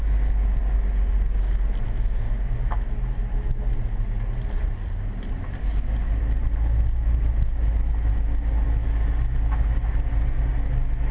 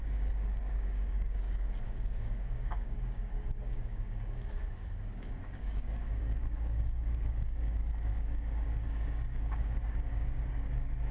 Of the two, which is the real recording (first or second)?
first